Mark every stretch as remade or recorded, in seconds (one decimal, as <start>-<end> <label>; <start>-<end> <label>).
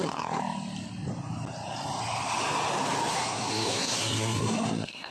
0.0-0.4 remade; 0.4-3.1 recorded; 3.1-5.1 remade